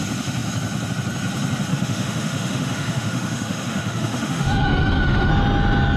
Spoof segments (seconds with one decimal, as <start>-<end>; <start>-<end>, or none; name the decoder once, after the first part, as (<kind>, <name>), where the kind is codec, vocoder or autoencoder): 1.7-5.3 (autoencoder, DAC-VAE)